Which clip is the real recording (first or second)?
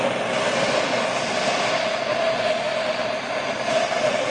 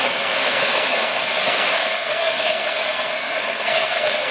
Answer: first